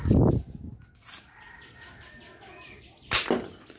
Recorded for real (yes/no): yes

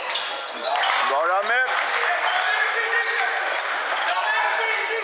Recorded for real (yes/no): yes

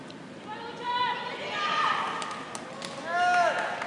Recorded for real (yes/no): yes